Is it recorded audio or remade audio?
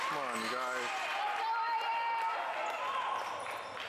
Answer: recorded